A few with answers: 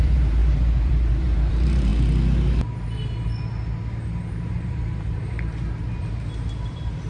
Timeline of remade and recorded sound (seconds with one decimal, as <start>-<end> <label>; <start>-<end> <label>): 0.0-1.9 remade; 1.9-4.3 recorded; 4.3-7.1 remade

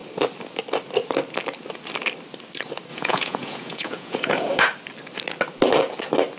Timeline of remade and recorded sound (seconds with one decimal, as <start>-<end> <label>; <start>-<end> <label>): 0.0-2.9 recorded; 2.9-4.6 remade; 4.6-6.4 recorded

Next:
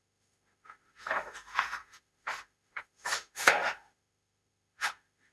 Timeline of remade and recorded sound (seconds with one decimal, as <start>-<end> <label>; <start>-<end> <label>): 0.0-5.3 remade